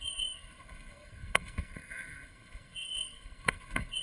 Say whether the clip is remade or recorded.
remade